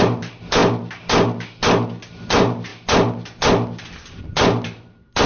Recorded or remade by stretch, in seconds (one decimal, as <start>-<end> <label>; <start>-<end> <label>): 0.0-0.6 remade; 0.6-2.1 recorded; 2.1-2.7 remade; 2.7-3.8 recorded; 3.8-5.3 remade